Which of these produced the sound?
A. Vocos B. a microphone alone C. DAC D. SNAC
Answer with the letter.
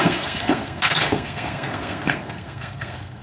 D